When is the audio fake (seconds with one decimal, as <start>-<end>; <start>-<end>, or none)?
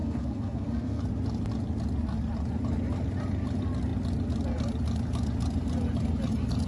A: 0.0-1.0